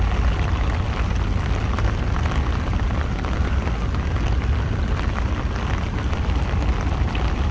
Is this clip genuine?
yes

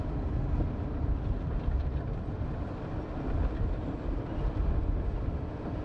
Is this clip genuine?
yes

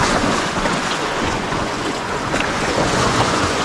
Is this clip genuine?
no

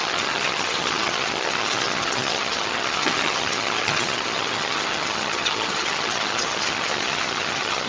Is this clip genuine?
no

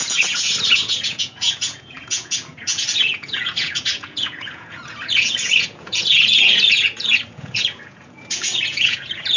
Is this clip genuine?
no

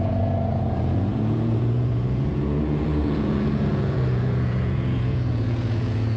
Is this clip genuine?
no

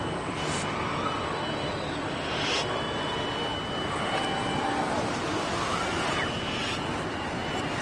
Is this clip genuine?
yes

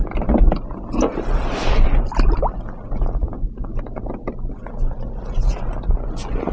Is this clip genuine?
yes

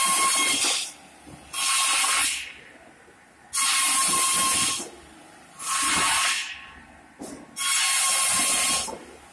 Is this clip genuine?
yes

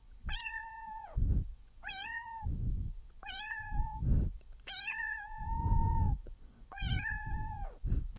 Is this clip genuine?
no